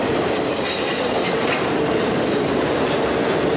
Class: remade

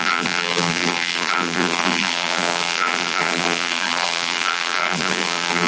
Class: remade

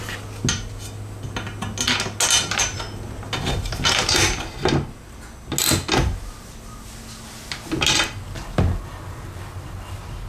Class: recorded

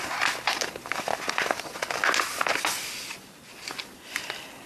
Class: recorded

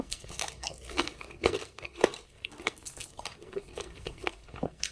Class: remade